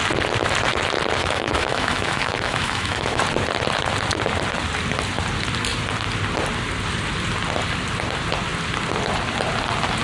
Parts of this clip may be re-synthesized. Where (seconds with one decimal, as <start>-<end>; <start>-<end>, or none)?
1.2-3.2